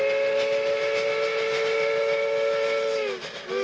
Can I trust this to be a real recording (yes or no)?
yes